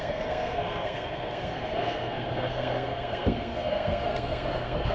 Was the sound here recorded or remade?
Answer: remade